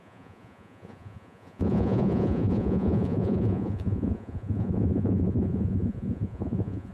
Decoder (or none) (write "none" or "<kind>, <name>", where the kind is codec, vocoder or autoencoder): vocoder, Vocos